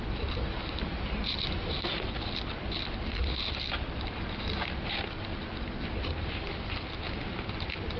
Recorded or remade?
recorded